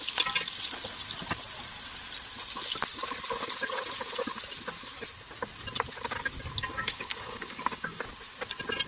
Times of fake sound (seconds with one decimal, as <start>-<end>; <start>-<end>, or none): 6.6-8.0